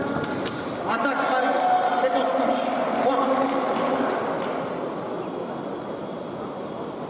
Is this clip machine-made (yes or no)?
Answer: no